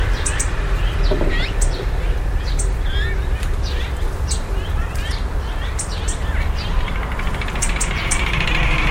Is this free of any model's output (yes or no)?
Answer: no